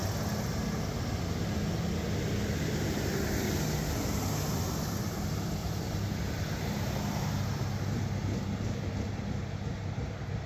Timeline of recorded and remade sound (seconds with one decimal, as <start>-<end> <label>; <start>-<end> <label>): 0.0-5.6 recorded; 5.6-8.8 remade; 8.8-10.5 recorded